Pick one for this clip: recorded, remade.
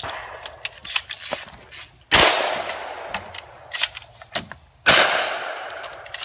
recorded